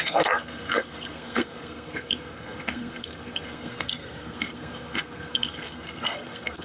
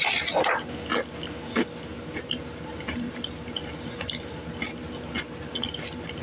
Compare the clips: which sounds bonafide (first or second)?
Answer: second